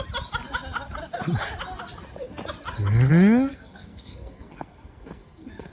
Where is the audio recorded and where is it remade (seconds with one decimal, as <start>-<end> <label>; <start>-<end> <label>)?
0.0-3.5 recorded; 3.5-5.7 remade